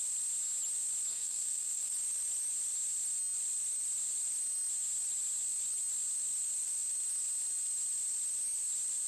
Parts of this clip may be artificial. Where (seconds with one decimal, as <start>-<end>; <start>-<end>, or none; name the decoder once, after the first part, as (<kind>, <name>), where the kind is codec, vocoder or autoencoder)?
1.1-1.9 (codec, SNAC)